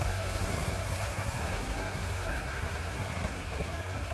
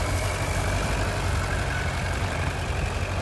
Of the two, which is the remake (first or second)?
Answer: first